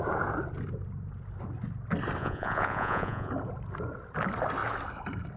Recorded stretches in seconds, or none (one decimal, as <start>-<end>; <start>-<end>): 0.0-2.2; 3.3-5.4